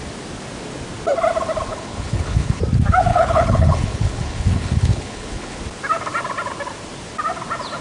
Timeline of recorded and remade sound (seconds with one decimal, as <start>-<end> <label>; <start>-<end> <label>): 0.0-1.7 recorded; 1.7-2.6 remade; 2.6-3.1 recorded; 3.1-5.6 remade; 5.6-7.8 recorded